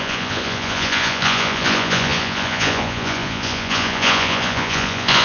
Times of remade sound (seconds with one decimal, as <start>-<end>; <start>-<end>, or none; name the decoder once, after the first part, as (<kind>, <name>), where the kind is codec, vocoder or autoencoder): 0.0-5.2 (vocoder, Vocos)